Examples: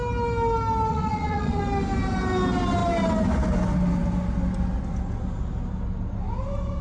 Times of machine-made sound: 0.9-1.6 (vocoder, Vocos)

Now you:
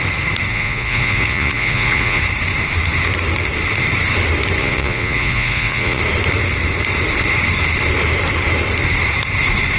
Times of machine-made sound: 0.5-2.2 (vocoder, Vocos); 4.6-6.0

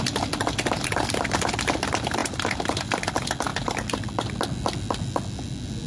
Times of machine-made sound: none

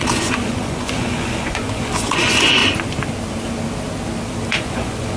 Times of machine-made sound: 0.0-2.6 (vocoder, Vocos); 4.5-5.2

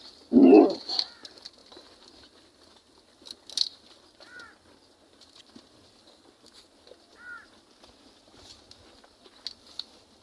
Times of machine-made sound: none

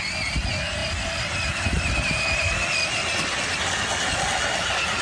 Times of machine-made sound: none

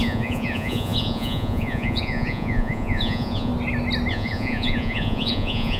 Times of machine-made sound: 0.0-3.5 (vocoder, Vocos); 4.1-5.8